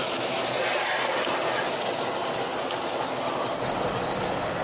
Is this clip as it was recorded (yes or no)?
yes